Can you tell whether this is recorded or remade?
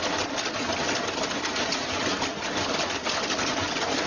recorded